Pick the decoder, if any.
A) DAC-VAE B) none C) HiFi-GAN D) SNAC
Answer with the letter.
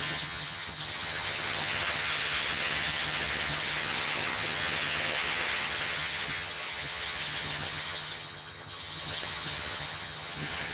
C